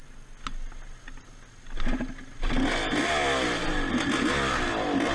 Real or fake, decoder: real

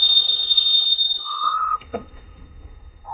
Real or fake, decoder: fake, codec, SNAC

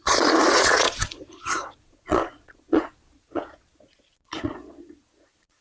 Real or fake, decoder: fake, vocoder, Vocos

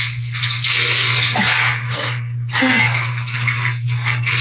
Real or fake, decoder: fake, codec, SNAC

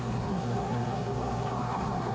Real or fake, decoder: fake, codec, SNAC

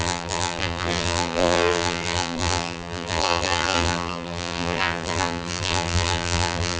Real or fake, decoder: fake, vocoder, BigVGAN v2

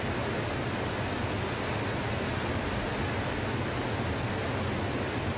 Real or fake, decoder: real